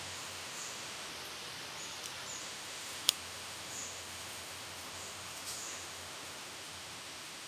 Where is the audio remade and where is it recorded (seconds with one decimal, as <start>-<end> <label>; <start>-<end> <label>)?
0.0-1.1 remade; 1.1-2.4 recorded; 2.4-7.5 remade